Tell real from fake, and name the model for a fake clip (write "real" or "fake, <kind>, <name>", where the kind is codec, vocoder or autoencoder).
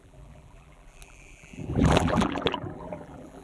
fake, vocoder, BigVGAN v2